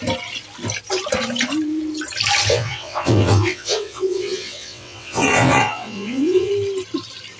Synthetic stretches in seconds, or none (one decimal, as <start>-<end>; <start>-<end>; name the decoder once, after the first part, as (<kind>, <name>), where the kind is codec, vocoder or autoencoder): 2.5-6.5 (vocoder, WaveNeXt)